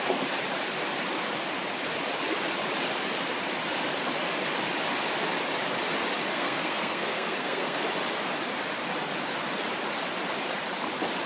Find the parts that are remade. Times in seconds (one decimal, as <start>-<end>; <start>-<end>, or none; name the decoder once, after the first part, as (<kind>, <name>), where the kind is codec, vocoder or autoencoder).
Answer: 6.3-7.8 (codec, SNAC)